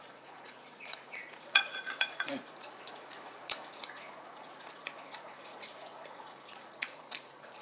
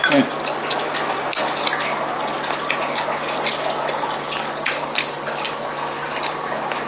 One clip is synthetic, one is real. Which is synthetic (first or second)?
first